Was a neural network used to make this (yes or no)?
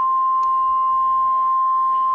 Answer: yes